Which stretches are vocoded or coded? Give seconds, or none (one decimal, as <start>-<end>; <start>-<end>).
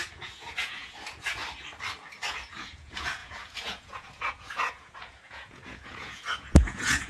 0.0-1.4; 2.3-7.1